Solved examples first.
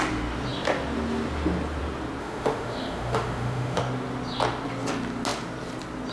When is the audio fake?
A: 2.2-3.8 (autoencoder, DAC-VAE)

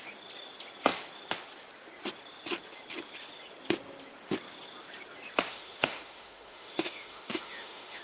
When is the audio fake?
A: 5.5-8.0 (autoencoder, DAC-VAE)

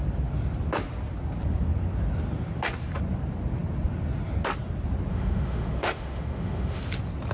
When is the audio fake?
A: 5.1-6.8 (autoencoder, DAC-VAE)